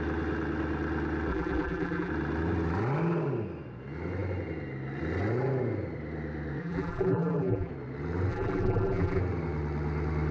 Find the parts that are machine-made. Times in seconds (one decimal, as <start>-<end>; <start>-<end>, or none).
1.3-2.1; 6.6-7.7; 8.3-9.2